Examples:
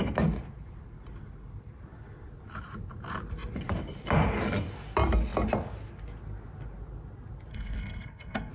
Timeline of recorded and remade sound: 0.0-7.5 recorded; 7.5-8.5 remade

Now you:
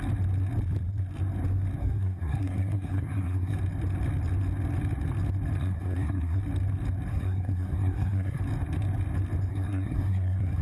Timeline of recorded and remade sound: 0.0-1.8 recorded; 1.8-3.6 remade; 3.6-5.6 recorded; 5.6-6.4 remade; 6.4-7.1 recorded; 7.1-8.4 remade; 8.4-9.5 recorded; 9.5-10.6 remade

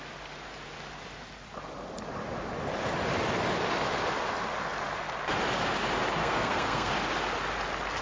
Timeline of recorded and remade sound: 0.0-6.2 recorded; 6.2-6.9 remade; 6.9-8.0 recorded

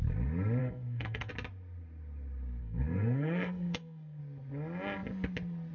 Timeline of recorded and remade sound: 0.0-0.6 recorded; 0.6-1.3 remade; 1.3-2.6 recorded; 2.6-4.2 remade; 4.2-5.7 recorded

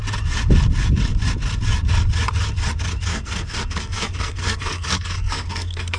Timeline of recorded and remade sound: 0.0-3.1 recorded; 3.1-6.0 remade

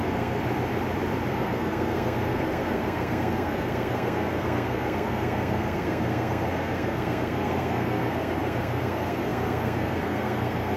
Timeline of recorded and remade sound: 0.0-0.4 remade; 0.4-1.3 recorded; 1.3-10.8 remade